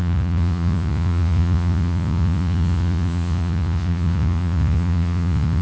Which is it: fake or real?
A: fake